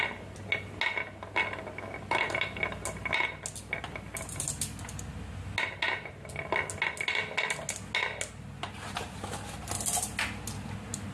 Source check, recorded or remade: recorded